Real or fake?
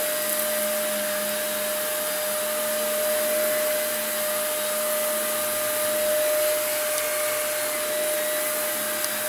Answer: real